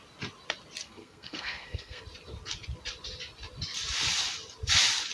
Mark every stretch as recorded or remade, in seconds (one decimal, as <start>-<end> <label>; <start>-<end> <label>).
0.0-0.8 recorded; 0.8-2.0 remade; 2.0-5.1 recorded